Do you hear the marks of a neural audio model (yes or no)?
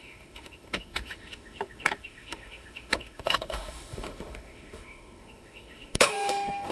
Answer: yes